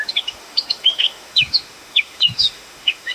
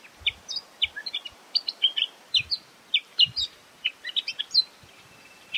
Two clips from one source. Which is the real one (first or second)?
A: second